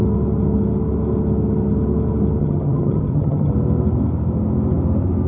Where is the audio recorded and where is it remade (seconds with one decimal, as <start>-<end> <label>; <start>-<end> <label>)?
0.0-2.4 recorded; 2.4-3.5 remade; 3.5-5.3 recorded